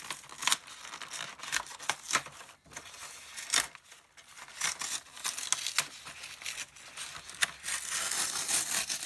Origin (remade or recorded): recorded